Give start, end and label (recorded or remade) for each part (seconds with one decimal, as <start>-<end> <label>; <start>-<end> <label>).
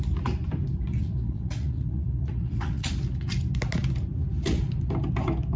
0.0-0.9 recorded; 0.9-2.9 remade; 2.9-5.6 recorded